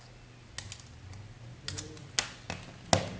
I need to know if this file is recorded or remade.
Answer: recorded